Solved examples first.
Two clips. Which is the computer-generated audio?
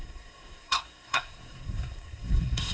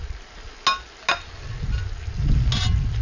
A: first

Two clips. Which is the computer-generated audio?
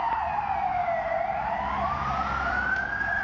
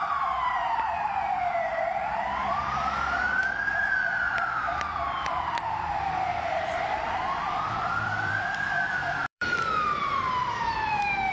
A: second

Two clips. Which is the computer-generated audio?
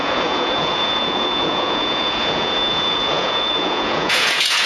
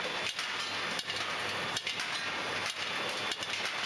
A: first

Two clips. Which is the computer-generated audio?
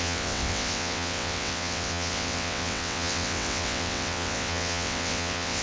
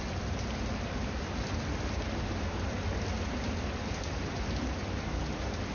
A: first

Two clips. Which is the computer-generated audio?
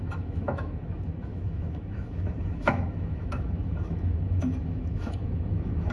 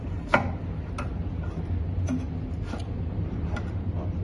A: first